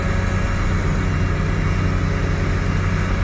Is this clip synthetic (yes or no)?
no